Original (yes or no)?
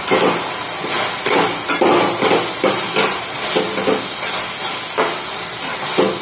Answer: yes